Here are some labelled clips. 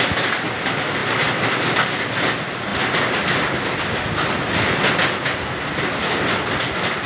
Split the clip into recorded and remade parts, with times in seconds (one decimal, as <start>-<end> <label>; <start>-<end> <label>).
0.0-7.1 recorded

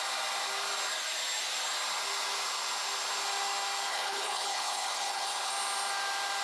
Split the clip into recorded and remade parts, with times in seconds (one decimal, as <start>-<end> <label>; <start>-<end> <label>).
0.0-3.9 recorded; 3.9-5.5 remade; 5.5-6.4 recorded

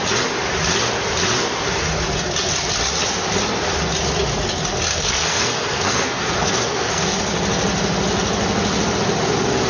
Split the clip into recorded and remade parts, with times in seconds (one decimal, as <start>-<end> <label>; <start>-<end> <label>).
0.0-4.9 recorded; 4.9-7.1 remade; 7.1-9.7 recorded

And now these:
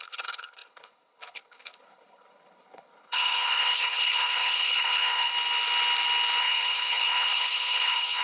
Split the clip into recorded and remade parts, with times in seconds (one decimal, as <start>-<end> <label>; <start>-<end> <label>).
0.0-5.3 remade; 5.3-6.4 recorded; 6.4-8.2 remade

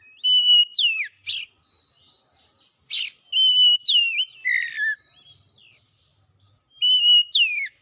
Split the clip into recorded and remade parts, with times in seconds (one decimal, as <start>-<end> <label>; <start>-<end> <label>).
0.0-7.8 recorded

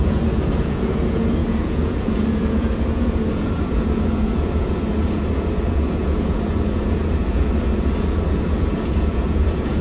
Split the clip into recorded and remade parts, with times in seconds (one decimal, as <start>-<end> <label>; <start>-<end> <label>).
0.0-9.8 remade